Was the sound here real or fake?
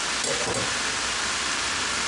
real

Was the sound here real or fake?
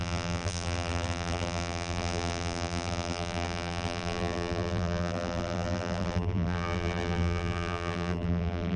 fake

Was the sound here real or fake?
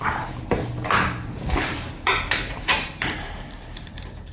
fake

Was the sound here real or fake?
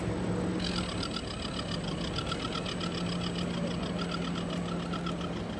real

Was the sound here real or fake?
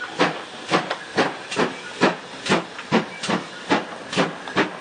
real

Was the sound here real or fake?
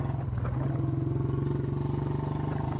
real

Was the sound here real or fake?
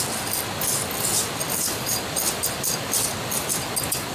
real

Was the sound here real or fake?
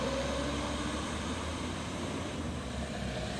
fake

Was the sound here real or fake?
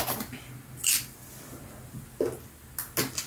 real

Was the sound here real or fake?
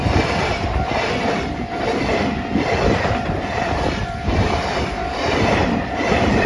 fake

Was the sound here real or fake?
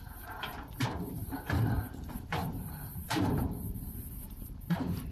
fake